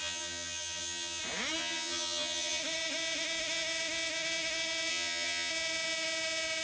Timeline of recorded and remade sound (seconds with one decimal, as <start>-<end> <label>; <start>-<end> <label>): 0.0-1.2 remade; 1.2-1.6 recorded; 1.6-2.6 remade; 2.6-4.9 recorded; 4.9-5.5 remade; 5.5-6.6 recorded